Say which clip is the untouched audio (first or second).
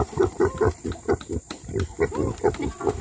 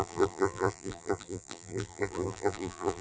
first